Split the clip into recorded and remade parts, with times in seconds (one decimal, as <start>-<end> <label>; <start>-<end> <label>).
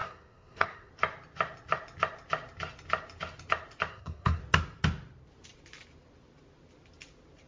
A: 0.0-0.9 remade; 0.9-3.9 recorded; 3.9-4.4 remade; 4.4-7.5 recorded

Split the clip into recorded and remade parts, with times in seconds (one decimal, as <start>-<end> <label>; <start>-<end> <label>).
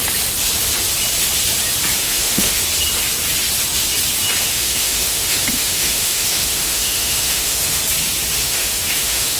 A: 0.0-2.0 recorded; 2.0-2.6 remade; 2.6-4.4 recorded; 4.4-7.8 remade; 7.8-8.4 recorded; 8.4-9.4 remade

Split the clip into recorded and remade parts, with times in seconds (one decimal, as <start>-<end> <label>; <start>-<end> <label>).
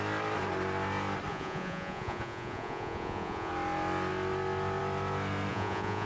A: 0.0-1.3 recorded; 1.3-3.5 remade; 3.5-5.5 recorded; 5.5-6.1 remade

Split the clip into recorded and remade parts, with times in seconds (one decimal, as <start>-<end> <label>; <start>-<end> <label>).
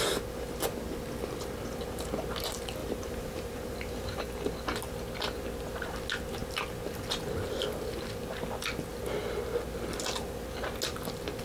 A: 0.0-2.8 recorded; 2.8-4.2 remade; 4.2-11.4 recorded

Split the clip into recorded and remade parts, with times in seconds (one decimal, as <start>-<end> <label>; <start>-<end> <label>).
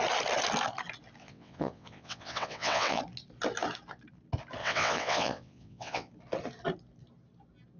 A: 0.0-1.2 recorded; 1.2-3.0 remade; 3.0-4.6 recorded; 4.6-6.1 remade; 6.1-7.8 recorded